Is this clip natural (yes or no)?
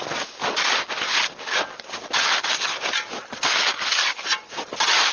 yes